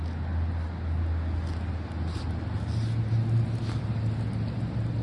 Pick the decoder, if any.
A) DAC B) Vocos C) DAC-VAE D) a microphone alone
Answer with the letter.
D